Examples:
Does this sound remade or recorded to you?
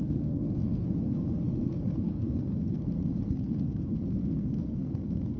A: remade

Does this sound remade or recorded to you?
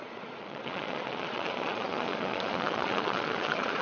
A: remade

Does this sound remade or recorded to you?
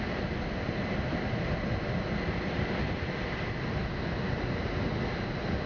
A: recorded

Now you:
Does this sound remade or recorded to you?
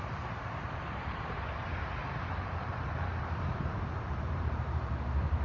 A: remade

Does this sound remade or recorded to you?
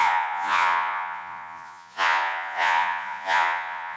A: remade